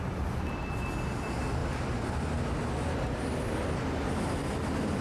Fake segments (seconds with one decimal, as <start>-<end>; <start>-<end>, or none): none